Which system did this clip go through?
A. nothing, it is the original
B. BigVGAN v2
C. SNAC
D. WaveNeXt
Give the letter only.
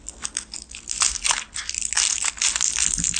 A